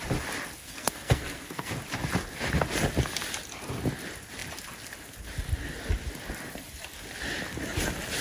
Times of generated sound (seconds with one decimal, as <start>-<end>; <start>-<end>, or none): 0.6-1.7

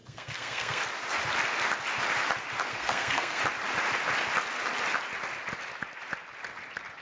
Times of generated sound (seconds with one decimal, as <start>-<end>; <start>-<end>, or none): 0.0-0.8; 2.7-3.4

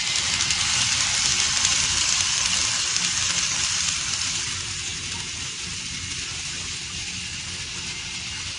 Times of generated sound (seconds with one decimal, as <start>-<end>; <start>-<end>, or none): none

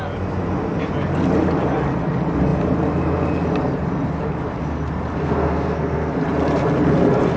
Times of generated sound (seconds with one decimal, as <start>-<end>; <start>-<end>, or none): 5.2-6.2

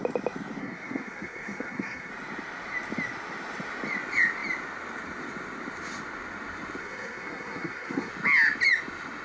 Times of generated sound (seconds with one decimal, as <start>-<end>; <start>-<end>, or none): 0.6-2.1; 6.8-8.1